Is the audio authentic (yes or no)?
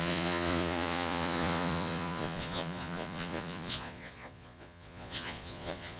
no